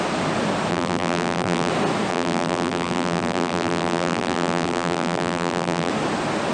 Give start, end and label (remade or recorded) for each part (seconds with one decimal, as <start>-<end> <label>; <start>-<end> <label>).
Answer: 0.0-0.7 recorded; 0.7-1.7 remade; 1.7-2.1 recorded; 2.1-5.9 remade; 5.9-6.5 recorded